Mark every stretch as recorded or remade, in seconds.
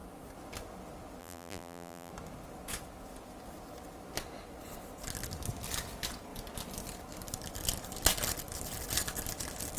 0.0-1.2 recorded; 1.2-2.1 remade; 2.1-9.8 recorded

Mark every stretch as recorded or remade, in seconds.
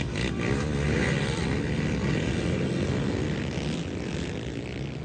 0.0-5.0 recorded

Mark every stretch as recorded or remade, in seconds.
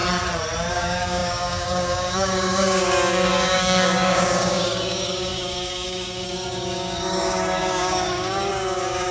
0.0-0.7 recorded; 0.7-9.1 remade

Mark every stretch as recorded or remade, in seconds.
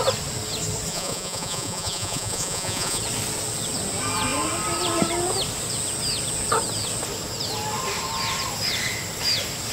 0.0-0.9 recorded; 0.9-3.0 remade; 3.0-9.7 recorded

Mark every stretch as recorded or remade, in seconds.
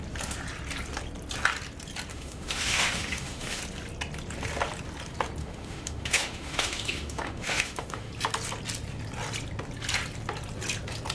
0.0-2.1 recorded; 2.1-3.6 remade; 3.6-5.4 recorded; 5.4-8.1 remade; 8.1-11.1 recorded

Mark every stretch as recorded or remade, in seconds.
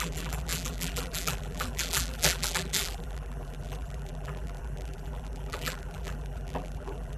0.0-7.2 remade